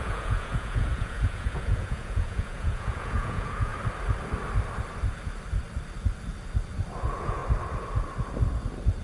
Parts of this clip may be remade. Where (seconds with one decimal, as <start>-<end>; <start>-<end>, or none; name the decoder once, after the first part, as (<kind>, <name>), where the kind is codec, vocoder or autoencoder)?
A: 0.0-3.7 (vocoder, Vocos); 7.0-7.4